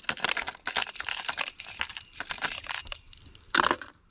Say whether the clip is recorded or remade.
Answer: recorded